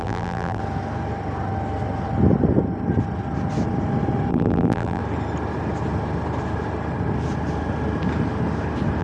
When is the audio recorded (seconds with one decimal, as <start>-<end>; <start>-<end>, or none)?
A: 0.6-4.3; 5.0-9.0